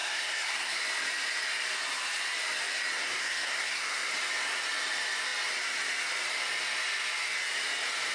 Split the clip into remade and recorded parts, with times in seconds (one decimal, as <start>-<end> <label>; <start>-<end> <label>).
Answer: 0.0-0.8 remade; 0.8-3.2 recorded; 3.2-4.1 remade; 4.1-8.1 recorded

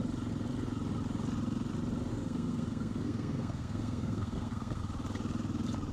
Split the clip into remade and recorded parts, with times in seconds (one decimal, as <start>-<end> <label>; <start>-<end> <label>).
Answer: 0.0-2.1 recorded; 2.1-4.8 remade; 4.8-5.9 recorded

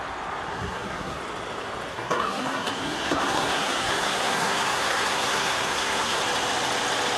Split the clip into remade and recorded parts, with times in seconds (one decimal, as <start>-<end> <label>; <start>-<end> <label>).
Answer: 0.0-0.5 recorded; 0.5-1.2 remade; 1.2-1.9 recorded; 1.9-6.2 remade; 6.2-7.2 recorded